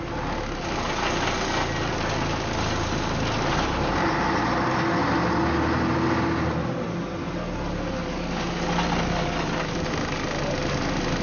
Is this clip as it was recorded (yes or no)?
yes